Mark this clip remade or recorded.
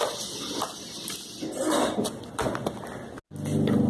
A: recorded